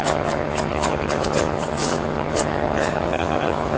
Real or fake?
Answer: fake